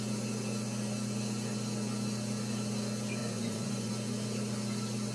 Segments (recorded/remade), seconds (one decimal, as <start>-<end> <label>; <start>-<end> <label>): 0.0-3.2 recorded; 3.2-3.9 remade; 3.9-5.1 recorded